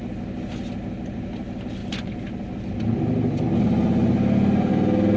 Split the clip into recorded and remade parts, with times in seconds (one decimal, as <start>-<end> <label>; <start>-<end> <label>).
0.0-5.2 recorded